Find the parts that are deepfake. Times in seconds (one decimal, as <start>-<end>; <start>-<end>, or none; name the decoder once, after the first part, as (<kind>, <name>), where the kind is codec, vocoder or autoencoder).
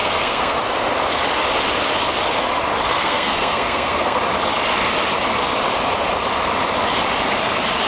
0.0-0.6 (codec, SNAC); 2.9-4.2